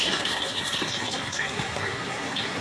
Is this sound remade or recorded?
remade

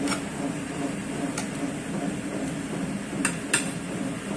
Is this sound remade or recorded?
recorded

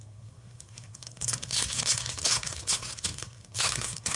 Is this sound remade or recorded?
remade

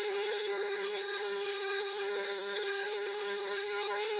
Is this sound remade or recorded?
remade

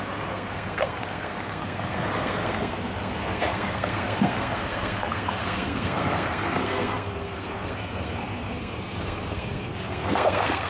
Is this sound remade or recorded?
remade